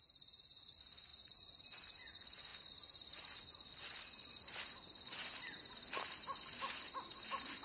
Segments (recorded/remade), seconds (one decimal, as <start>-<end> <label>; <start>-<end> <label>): 0.0-7.6 recorded

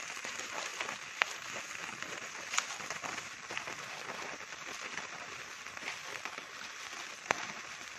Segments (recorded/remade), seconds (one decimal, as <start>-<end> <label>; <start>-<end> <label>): 0.0-8.0 recorded

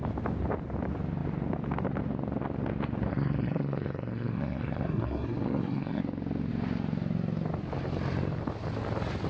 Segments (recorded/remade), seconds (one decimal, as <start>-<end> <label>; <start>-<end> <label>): 0.0-3.1 recorded; 3.1-6.0 remade; 6.0-9.3 recorded